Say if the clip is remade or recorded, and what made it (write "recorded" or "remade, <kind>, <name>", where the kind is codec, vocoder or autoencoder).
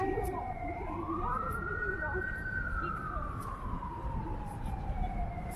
remade, vocoder, BigVGAN v2